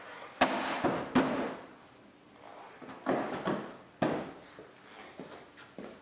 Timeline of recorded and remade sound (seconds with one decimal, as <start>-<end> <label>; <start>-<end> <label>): 0.0-6.0 recorded